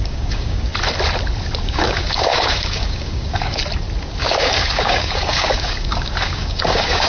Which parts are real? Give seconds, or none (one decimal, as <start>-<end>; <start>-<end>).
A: 0.7-1.6; 3.6-4.2